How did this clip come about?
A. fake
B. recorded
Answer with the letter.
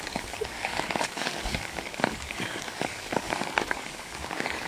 A